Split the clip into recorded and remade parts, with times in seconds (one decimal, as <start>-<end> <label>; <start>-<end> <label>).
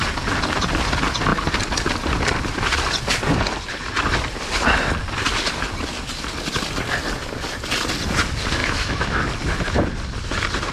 0.0-8.6 recorded; 8.6-9.2 remade; 9.2-10.7 recorded